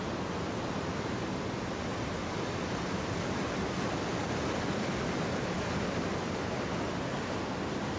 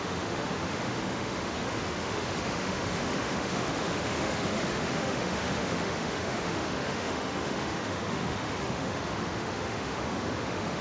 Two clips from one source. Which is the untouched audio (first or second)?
first